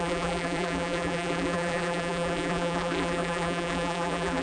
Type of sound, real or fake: fake